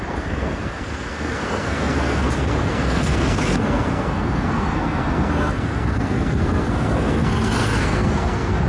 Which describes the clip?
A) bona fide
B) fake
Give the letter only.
B